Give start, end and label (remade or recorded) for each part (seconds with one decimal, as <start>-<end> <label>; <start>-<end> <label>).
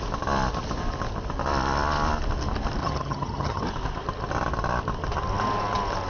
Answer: 0.0-2.8 recorded; 2.8-3.6 remade; 3.6-6.1 recorded